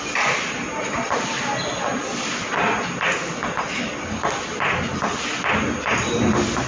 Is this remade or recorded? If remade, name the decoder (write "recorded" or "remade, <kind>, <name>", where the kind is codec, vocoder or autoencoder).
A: recorded